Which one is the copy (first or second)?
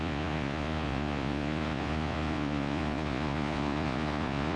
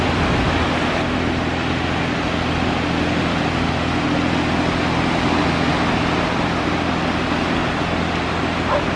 first